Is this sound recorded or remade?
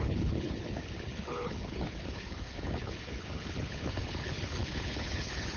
remade